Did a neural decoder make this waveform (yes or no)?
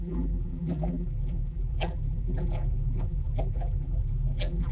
yes